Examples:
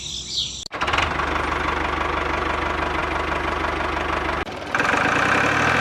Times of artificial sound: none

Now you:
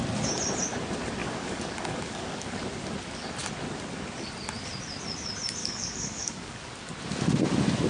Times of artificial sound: 1.2-2.6 (codec, DAC); 5.6-6.7

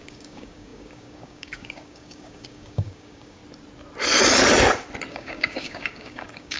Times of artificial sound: 0.0-3.4 (codec, DAC); 5.1-6.6

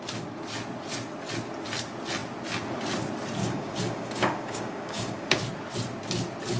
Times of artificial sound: 3.4-5.4 (codec, DAC)

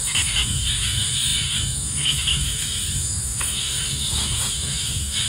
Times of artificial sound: 0.0-5.3 (codec, DAC)

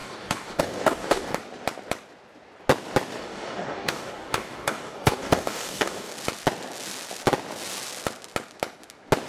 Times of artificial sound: 0.0-1.4 (codec, DAC); 3.2-6.1

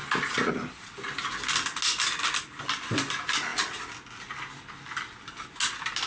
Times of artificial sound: none

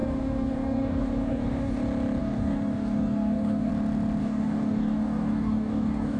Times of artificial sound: 0.0-1.8 (codec, DAC); 2.2-3.7; 4.2-6.2